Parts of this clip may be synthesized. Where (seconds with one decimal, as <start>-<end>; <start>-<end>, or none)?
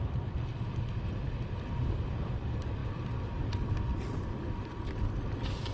none